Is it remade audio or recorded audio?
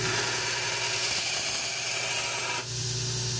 recorded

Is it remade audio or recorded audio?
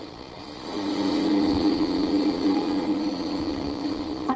remade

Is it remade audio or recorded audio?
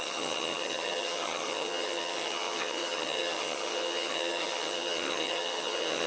remade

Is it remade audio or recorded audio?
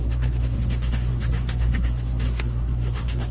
remade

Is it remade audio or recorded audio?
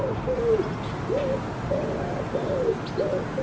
recorded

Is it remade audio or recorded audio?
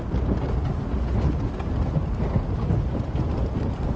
recorded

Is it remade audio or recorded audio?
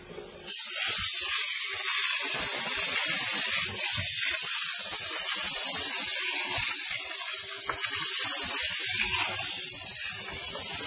recorded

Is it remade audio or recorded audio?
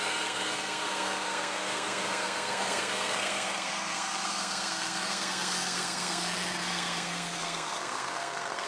remade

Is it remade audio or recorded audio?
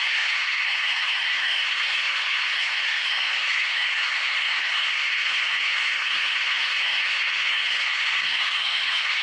remade